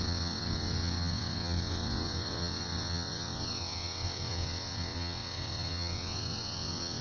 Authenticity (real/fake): fake